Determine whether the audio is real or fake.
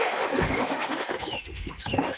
fake